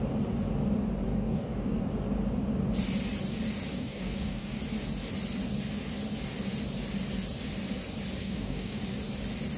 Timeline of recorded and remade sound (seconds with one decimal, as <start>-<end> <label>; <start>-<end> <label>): 0.0-1.1 recorded; 1.1-1.8 remade; 1.8-3.7 recorded; 3.7-4.6 remade; 4.6-8.2 recorded; 8.2-8.8 remade; 8.8-9.6 recorded